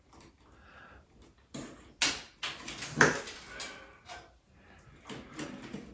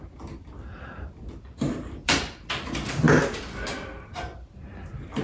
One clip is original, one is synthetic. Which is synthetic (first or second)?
second